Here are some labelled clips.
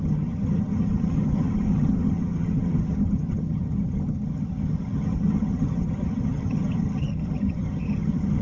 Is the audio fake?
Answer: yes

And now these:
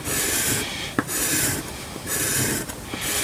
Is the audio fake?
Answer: no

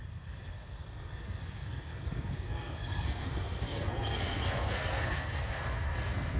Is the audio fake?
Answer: yes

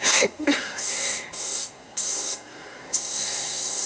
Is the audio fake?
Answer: yes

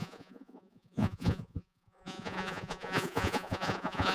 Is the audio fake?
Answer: yes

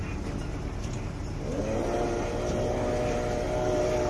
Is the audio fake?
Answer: no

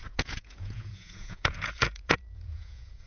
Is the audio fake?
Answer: yes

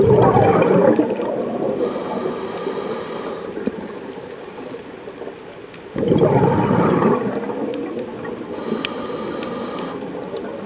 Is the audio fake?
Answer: no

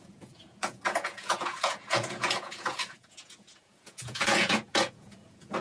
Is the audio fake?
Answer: yes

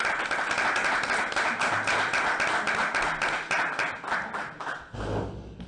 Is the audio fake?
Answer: no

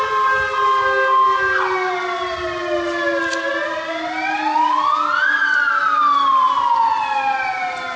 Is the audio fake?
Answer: no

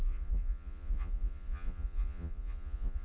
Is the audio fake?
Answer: yes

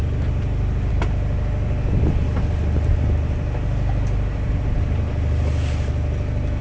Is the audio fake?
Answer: no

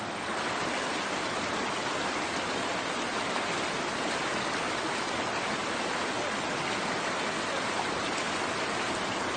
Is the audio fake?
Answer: no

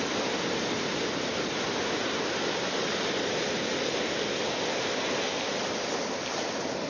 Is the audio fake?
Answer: no